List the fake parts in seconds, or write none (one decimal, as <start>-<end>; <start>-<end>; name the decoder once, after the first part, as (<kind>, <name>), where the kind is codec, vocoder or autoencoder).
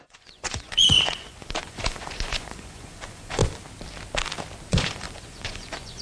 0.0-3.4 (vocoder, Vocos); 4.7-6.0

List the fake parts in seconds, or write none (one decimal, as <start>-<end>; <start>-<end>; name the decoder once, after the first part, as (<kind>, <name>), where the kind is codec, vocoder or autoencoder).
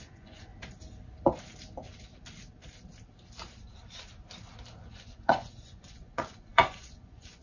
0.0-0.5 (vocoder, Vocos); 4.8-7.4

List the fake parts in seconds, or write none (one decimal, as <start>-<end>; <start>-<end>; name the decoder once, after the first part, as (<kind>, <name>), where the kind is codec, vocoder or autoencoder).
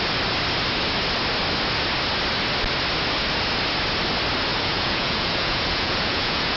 4.5-6.6 (vocoder, Vocos)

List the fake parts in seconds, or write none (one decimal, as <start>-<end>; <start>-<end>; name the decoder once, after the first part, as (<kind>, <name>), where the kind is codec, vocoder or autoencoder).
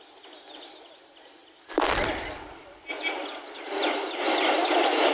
none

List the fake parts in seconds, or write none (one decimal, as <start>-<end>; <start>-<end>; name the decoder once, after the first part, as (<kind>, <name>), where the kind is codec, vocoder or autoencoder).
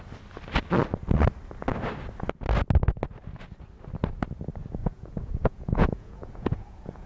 4.8-7.1 (vocoder, Vocos)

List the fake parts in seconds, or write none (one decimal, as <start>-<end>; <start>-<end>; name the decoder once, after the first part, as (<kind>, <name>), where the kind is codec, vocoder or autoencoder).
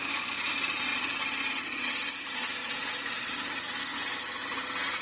2.6-3.3 (vocoder, Vocos)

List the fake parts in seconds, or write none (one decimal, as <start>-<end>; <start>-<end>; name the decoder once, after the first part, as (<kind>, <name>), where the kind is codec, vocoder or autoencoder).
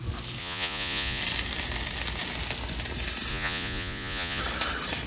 0.4-1.2 (vocoder, Vocos); 3.3-4.4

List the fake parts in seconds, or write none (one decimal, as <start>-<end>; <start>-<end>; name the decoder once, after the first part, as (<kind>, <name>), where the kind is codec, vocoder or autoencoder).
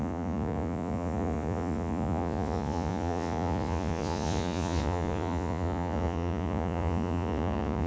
0.0-7.9 (vocoder, Vocos)